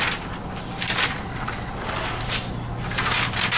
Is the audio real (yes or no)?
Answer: yes